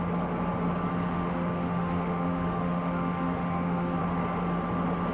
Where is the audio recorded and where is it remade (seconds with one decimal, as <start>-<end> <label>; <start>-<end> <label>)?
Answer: 0.0-0.9 recorded; 0.9-4.0 remade; 4.0-5.1 recorded